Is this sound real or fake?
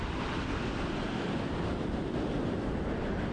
real